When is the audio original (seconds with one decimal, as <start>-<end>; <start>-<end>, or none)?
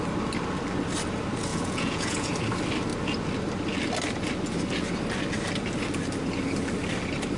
0.0-1.5; 2.3-7.4